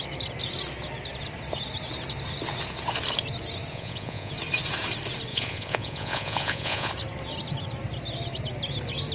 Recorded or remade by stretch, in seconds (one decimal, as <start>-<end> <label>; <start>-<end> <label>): 0.0-3.7 recorded; 3.7-4.3 remade; 4.3-5.3 recorded; 5.3-6.9 remade; 6.9-9.1 recorded